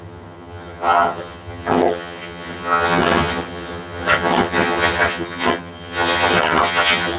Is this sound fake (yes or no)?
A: yes